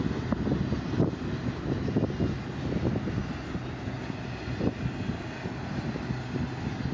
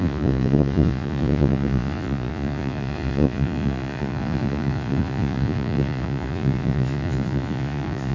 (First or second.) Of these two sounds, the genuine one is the first